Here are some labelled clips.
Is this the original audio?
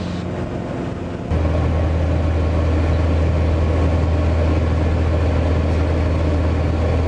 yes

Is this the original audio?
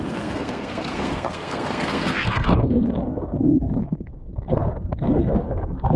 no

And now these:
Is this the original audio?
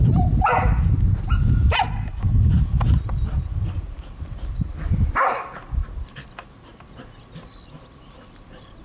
yes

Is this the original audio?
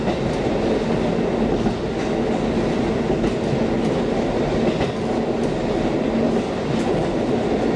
yes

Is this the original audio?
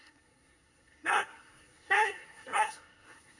no